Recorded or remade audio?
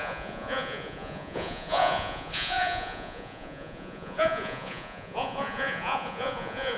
remade